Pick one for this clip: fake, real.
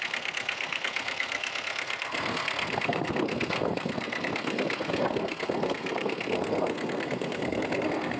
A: fake